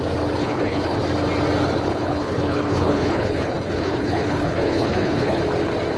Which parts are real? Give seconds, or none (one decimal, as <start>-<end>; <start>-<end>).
0.0-0.4; 1.0-1.9; 5.4-6.0